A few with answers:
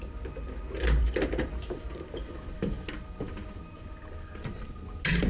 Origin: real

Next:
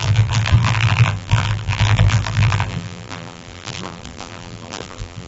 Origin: fake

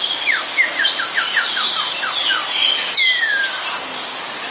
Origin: real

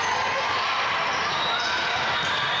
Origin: real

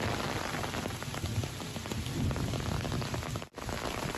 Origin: real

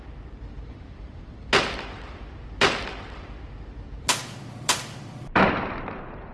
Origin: fake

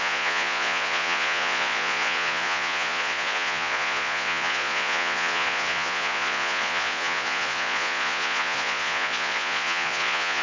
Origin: fake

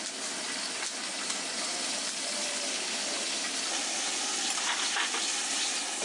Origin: fake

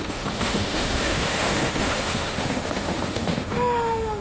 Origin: fake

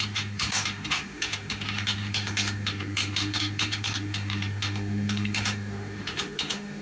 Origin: fake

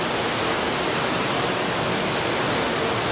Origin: real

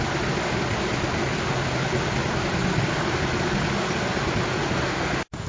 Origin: real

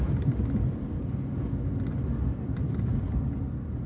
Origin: real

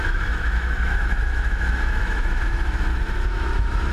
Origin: fake